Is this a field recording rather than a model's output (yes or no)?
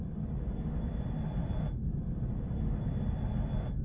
yes